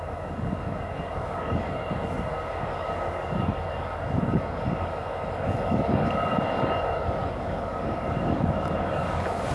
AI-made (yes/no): yes